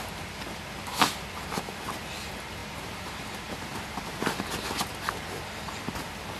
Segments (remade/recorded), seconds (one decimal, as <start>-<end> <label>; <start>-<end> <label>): 0.0-2.6 recorded; 2.6-4.4 remade; 4.4-6.4 recorded